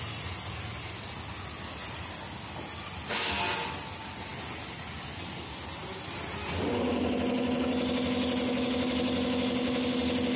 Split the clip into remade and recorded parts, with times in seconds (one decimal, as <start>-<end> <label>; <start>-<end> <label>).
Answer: 0.0-10.4 recorded